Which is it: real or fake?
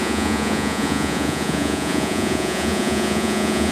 fake